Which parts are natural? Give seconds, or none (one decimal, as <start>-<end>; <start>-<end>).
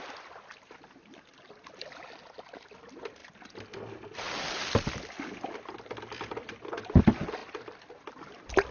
0.0-8.7